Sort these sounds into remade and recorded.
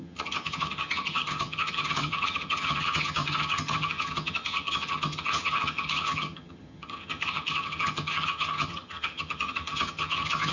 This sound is remade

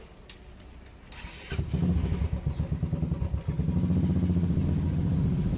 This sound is recorded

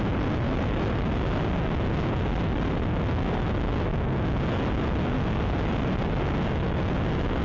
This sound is recorded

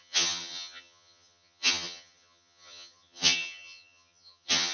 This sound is remade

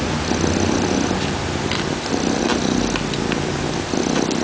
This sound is recorded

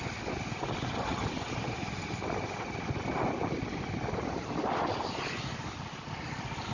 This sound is recorded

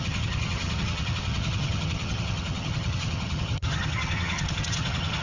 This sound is remade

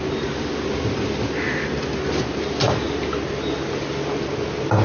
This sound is recorded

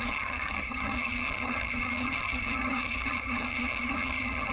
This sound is remade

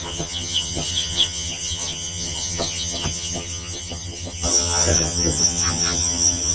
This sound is remade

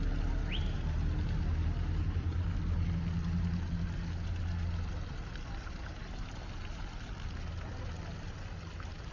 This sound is recorded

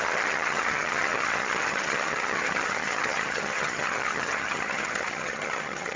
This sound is remade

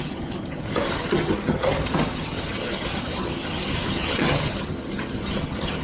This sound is remade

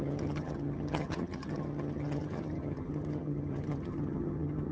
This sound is remade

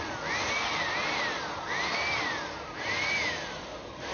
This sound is recorded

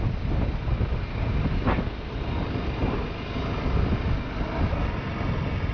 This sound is recorded